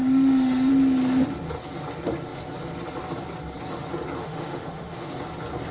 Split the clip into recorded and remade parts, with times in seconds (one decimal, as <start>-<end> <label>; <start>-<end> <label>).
0.0-0.7 remade; 0.7-4.2 recorded; 4.2-5.1 remade; 5.1-5.7 recorded